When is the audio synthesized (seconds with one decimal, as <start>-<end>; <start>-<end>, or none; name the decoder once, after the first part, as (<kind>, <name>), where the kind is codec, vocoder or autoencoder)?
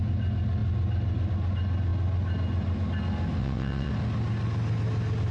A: 3.4-3.9 (vocoder, WaveNeXt)